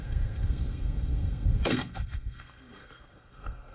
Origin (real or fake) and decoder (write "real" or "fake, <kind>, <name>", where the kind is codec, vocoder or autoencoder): fake, codec, SNAC